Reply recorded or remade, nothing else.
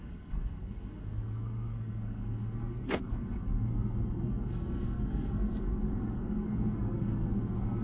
remade